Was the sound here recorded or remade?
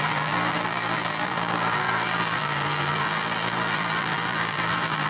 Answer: remade